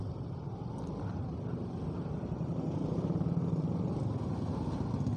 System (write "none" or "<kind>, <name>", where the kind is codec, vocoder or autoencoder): none